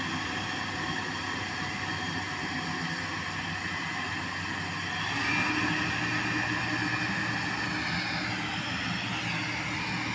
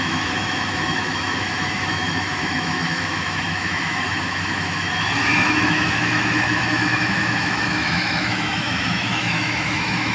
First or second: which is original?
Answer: first